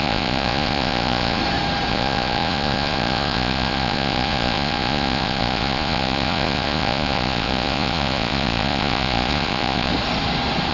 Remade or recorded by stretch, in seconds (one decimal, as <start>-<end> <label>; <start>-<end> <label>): 0.0-1.4 remade; 1.4-1.9 recorded; 1.9-9.9 remade; 9.9-10.7 recorded